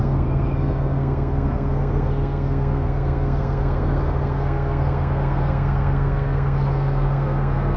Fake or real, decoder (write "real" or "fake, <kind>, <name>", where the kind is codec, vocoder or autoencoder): fake, codec, SNAC